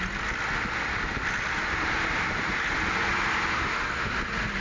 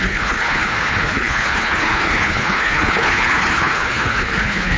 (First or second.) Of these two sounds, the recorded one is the first